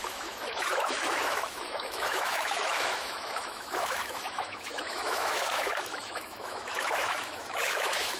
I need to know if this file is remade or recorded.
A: remade